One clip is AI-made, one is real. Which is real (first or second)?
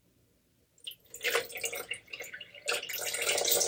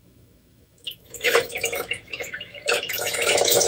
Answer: first